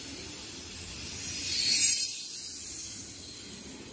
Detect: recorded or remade recorded